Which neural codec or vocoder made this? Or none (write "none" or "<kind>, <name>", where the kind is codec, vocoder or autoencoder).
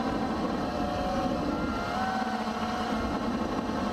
none